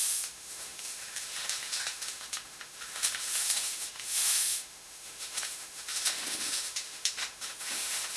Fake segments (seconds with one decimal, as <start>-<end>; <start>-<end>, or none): 0.0-8.2